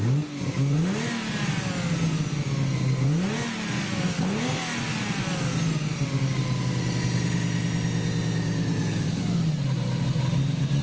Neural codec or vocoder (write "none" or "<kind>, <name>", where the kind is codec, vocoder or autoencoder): none